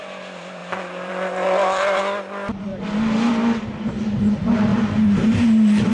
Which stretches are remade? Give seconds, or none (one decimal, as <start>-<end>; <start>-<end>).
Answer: 0.6-2.0; 2.7-3.3; 4.7-5.9